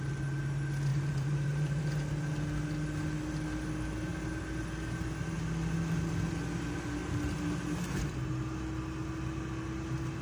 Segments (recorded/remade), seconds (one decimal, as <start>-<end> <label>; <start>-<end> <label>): 0.0-0.9 recorded; 0.9-1.8 remade; 1.8-10.2 recorded